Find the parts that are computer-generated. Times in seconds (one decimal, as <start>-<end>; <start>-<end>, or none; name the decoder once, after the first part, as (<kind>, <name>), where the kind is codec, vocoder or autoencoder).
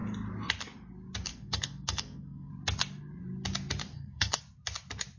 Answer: 1.3-2.5 (codec, SNAC); 3.9-4.4